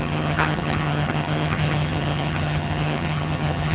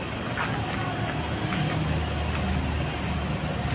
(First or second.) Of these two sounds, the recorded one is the second